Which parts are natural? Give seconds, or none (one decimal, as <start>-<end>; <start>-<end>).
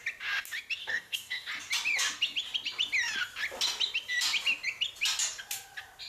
0.0-0.8; 1.5-6.1